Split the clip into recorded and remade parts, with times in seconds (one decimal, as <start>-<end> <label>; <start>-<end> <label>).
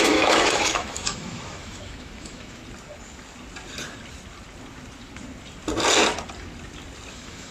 0.0-2.6 remade; 2.6-7.1 recorded; 7.1-7.5 remade